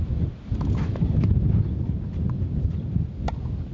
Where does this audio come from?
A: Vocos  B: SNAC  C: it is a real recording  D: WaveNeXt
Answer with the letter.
C